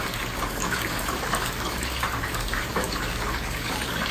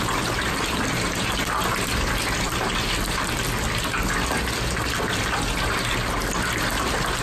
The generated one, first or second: first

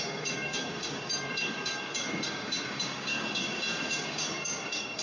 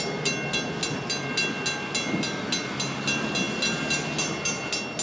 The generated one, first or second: first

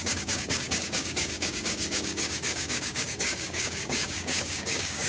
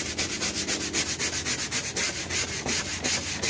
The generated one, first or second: first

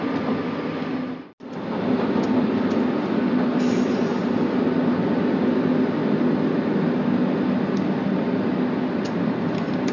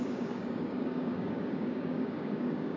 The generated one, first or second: second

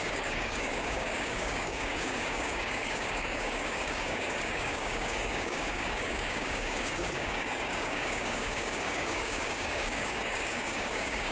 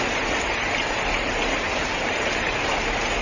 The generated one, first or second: first